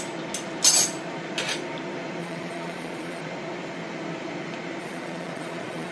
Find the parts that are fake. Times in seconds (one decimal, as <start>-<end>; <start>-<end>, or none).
2.2-3.2; 4.8-5.9